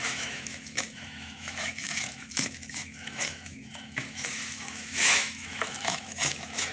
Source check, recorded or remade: remade